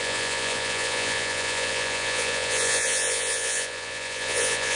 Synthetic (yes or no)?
yes